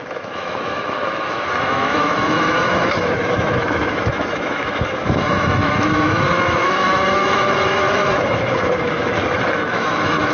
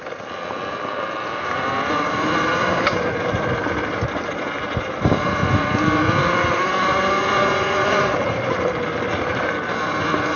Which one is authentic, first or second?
second